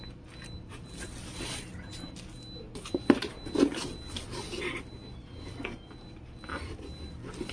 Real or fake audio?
real